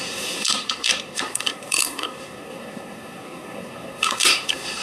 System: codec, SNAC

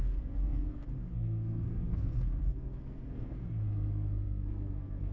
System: codec, SNAC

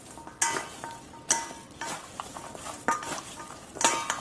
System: none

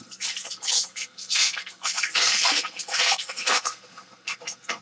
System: codec, SNAC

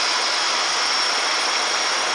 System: vocoder, BigVGAN v2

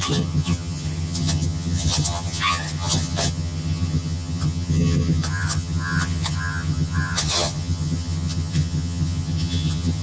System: vocoder, HiFi-GAN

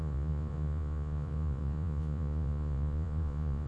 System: vocoder, Vocos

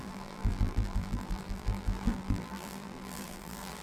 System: vocoder, BigVGAN v2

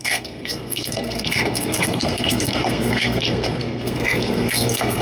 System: codec, SNAC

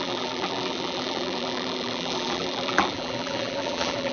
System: vocoder, BigVGAN v2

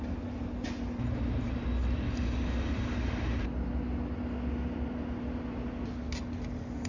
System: none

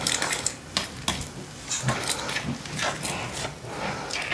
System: none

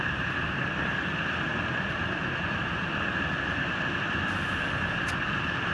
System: none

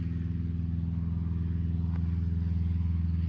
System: none